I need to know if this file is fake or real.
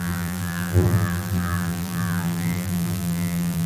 fake